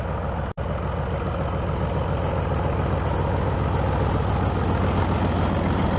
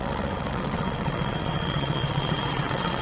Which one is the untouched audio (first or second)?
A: first